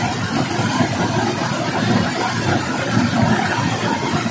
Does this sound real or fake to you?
real